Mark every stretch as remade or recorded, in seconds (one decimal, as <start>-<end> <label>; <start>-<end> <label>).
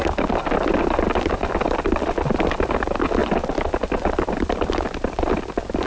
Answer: 0.0-5.9 recorded